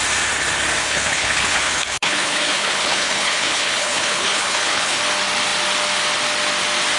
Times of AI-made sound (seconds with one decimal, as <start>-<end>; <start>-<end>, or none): 0.8-5.0